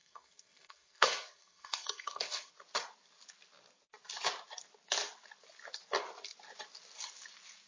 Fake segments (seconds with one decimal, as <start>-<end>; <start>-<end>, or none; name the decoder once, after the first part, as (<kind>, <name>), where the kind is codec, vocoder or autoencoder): 0.0-2.5 (codec, SNAC)